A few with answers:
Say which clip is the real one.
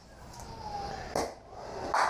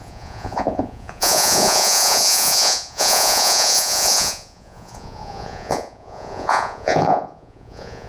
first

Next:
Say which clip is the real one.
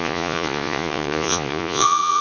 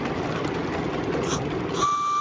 second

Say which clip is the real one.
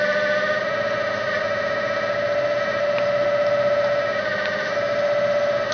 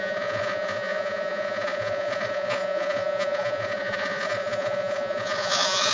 first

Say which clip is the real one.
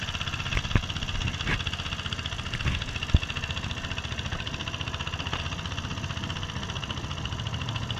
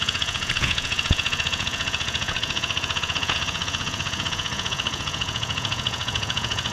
first